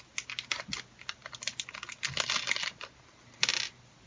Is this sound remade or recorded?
recorded